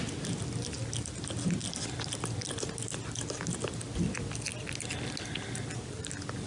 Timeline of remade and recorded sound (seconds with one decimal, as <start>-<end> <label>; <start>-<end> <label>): 0.0-6.5 recorded